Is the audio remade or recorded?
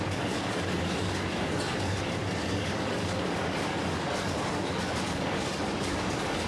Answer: remade